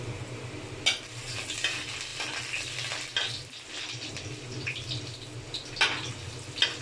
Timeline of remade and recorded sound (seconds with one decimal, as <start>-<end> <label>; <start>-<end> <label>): 0.0-6.8 recorded